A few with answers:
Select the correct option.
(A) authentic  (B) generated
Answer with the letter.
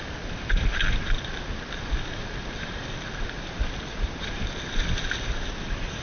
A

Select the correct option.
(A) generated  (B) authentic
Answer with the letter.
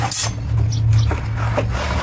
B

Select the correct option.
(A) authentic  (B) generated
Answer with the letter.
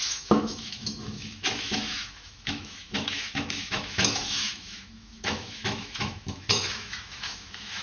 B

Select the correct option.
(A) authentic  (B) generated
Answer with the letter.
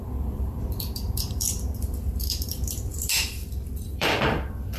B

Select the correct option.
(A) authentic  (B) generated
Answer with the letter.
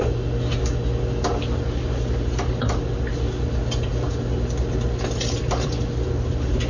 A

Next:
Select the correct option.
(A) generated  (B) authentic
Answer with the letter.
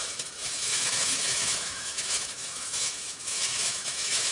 A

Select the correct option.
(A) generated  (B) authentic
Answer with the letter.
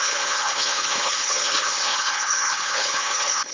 A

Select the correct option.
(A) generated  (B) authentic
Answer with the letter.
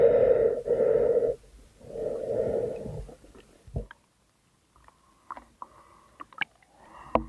B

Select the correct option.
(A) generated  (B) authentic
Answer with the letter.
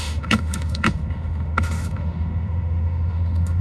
A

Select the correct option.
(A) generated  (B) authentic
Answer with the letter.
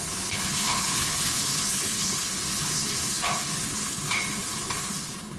A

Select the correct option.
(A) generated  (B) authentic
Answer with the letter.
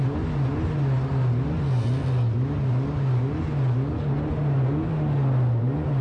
B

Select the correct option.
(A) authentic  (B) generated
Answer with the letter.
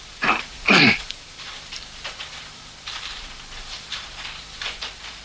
B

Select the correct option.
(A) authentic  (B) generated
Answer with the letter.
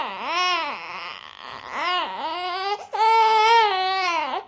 A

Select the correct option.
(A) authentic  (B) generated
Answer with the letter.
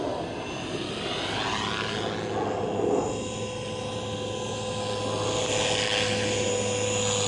A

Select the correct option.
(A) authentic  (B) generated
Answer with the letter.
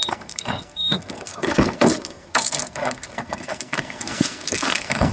B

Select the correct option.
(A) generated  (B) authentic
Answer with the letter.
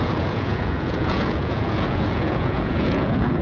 A